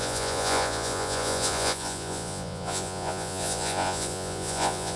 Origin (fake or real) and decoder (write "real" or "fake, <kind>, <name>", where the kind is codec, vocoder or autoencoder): fake, vocoder, Vocos